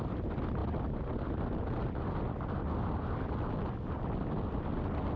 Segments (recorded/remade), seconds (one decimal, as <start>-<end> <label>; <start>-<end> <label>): 0.0-5.2 recorded

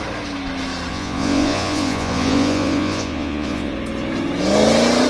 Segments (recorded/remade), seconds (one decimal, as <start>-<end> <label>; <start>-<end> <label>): 0.0-0.9 recorded; 0.9-3.7 remade; 3.7-5.1 recorded

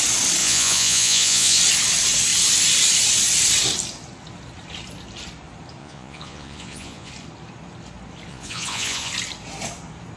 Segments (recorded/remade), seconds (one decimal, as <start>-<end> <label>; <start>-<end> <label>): 0.0-0.4 recorded; 0.4-1.6 remade; 1.6-5.8 recorded; 5.8-7.1 remade; 7.1-8.3 recorded; 8.3-9.1 remade; 9.1-10.2 recorded